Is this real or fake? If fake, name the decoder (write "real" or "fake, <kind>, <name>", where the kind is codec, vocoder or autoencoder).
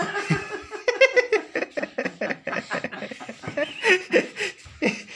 real